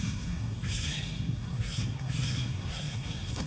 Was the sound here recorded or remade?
remade